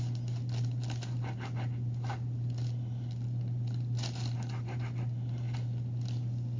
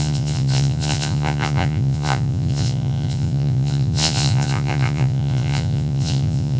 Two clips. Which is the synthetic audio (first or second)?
second